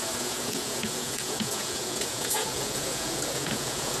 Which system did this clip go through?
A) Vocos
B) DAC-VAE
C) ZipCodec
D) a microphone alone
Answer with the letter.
A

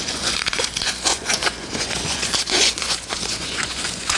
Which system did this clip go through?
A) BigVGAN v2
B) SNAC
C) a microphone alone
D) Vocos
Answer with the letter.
D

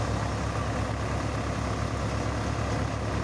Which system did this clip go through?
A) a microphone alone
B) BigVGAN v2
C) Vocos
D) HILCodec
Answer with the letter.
A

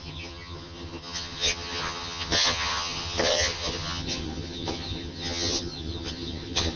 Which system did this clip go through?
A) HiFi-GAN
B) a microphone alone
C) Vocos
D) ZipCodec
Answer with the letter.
A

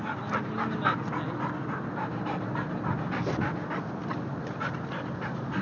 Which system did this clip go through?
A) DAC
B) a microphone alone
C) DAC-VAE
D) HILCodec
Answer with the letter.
B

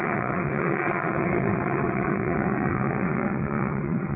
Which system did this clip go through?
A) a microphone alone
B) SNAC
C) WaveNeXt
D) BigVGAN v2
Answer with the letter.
C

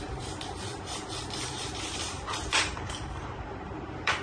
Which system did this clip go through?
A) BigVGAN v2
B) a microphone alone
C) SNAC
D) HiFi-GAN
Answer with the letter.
A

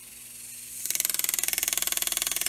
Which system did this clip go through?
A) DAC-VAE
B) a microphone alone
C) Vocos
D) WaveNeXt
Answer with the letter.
B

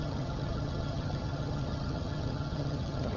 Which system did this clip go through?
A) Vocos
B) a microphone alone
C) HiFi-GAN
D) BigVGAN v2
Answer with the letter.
C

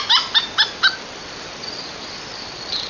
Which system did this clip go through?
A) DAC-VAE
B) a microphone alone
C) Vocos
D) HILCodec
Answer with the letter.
B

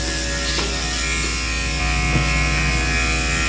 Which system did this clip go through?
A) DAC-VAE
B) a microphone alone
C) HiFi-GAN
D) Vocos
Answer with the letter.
B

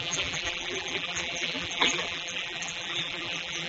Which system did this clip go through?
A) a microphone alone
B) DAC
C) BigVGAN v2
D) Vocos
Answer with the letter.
C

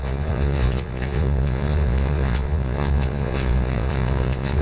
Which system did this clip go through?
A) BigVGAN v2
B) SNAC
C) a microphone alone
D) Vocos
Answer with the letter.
D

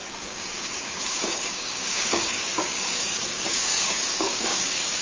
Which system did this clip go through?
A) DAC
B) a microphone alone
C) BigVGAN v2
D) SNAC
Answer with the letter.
A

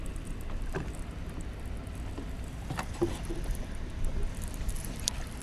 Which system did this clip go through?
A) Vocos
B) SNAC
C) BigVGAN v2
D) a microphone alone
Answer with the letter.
C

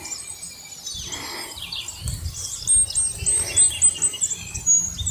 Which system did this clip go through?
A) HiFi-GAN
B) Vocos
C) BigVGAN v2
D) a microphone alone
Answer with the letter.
D